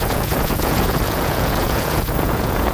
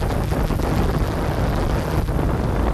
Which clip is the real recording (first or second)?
second